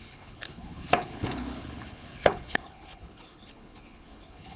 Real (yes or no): no